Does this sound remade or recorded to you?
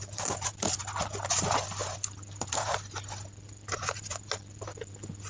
recorded